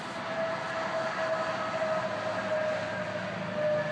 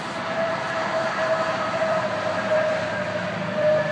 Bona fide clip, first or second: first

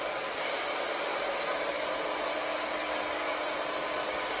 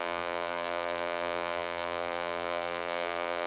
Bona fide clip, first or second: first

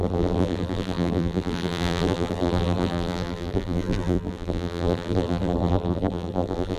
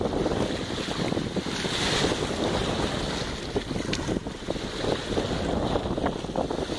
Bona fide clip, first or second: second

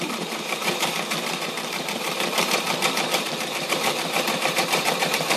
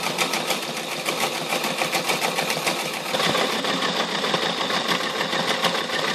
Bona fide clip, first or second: second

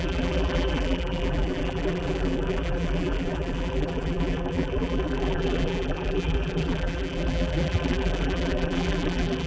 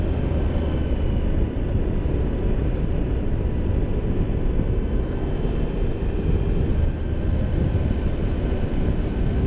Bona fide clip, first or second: second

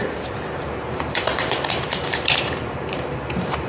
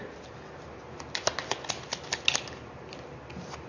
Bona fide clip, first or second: second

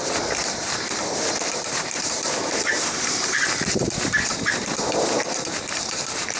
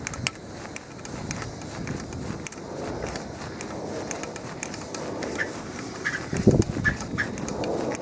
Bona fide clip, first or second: second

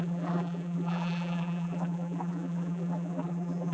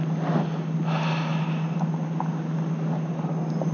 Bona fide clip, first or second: second